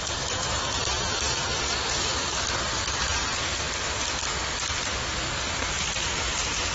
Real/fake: real